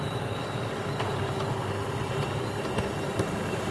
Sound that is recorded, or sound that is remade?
recorded